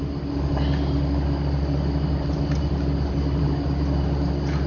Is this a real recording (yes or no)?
yes